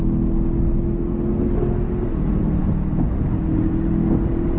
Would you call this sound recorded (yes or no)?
yes